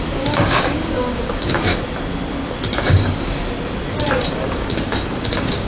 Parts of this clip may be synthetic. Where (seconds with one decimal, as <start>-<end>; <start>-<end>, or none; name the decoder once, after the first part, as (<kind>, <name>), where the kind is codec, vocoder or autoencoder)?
0.0-1.7 (codec, DAC); 2.8-3.4; 4.3-5.7